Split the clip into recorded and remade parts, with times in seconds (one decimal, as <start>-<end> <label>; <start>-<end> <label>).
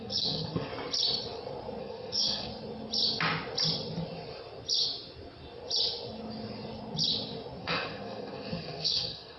0.0-0.7 remade; 0.7-1.8 recorded; 1.8-2.5 remade; 2.5-7.6 recorded; 7.6-9.4 remade